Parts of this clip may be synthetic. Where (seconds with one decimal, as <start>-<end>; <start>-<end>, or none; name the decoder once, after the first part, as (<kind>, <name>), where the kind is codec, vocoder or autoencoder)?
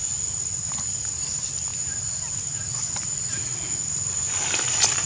none